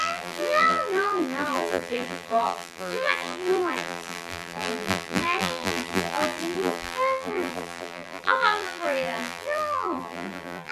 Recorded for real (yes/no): no